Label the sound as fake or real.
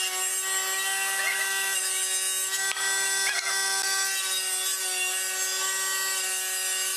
real